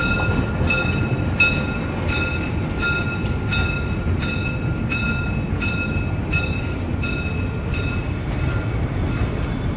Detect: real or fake real